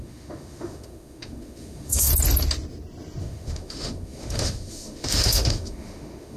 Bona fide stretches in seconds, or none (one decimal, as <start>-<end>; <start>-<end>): 2.1-3.2